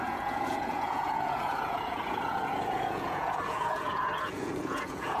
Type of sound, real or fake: fake